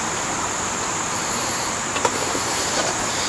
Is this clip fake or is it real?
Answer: fake